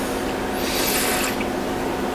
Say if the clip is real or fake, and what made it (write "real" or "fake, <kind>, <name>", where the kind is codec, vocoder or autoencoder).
real